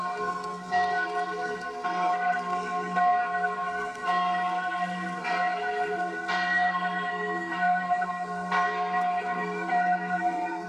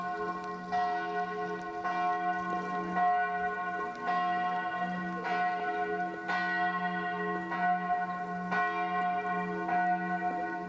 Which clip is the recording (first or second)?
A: second